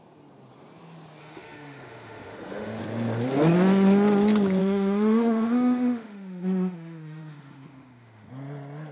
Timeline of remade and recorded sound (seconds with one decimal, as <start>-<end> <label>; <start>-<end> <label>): 0.0-1.2 recorded; 1.2-2.8 remade; 2.8-4.6 recorded; 4.6-8.3 remade; 8.3-8.9 recorded